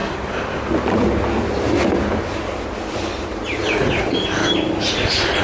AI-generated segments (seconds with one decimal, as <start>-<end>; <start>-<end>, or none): 3.1-5.4